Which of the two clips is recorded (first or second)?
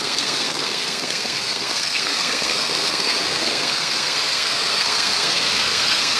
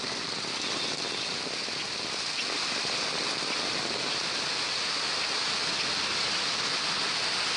second